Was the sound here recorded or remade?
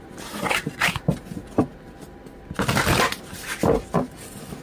recorded